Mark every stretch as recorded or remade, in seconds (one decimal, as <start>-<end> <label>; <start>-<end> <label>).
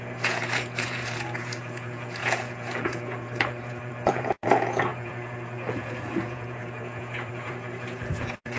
0.0-8.6 remade